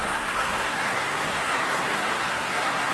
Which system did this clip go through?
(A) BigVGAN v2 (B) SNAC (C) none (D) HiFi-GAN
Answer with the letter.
B